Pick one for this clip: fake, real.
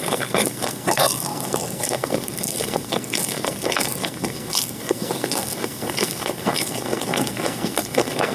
fake